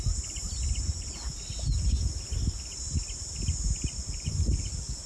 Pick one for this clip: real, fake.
real